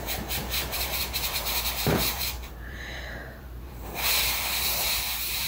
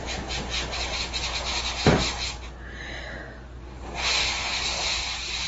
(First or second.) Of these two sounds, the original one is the second